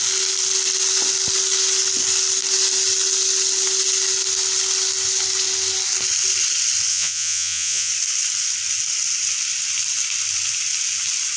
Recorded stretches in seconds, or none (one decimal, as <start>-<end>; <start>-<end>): 0.0-6.9; 7.9-11.4